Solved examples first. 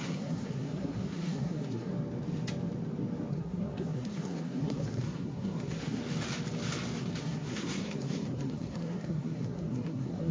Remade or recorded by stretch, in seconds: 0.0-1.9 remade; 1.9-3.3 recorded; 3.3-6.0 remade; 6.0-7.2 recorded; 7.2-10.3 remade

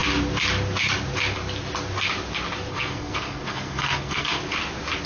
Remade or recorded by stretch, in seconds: 0.0-2.7 recorded; 2.7-4.4 remade; 4.4-5.1 recorded

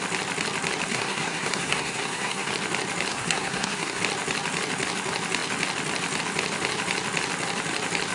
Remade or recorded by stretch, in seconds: 0.0-0.9 recorded; 0.9-2.5 remade; 2.5-3.1 recorded; 3.1-4.0 remade; 4.0-8.1 recorded

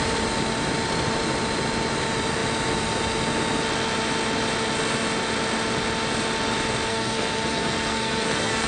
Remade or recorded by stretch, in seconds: 0.0-6.9 recorded; 6.9-8.7 remade

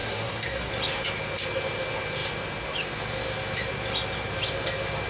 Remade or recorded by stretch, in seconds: 0.0-0.7 remade; 0.7-5.1 recorded